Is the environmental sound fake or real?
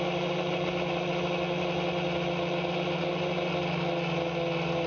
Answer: real